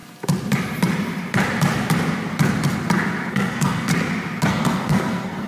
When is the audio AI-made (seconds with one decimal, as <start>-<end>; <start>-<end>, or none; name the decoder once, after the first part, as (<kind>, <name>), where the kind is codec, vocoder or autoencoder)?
3.3-3.9 (codec, SNAC); 4.5-5.5